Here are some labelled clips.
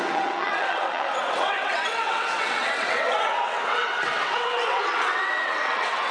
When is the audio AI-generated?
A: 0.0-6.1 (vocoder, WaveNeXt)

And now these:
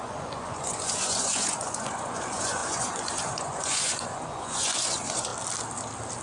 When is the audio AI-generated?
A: 0.0-5.3 (vocoder, Vocos)

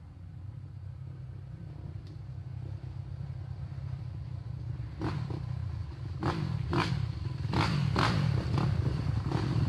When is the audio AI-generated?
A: 0.0-9.7 (vocoder, BigVGAN v2)

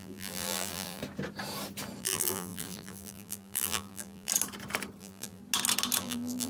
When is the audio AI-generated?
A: 0.0-1.0 (vocoder, BigVGAN v2); 2.0-4.3; 5.0-5.4; 6.0-6.5

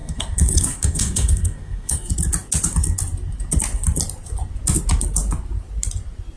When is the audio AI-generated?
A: 0.0-2.1 (codec, SNAC)

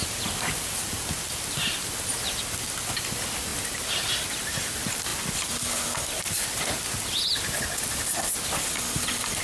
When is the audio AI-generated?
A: none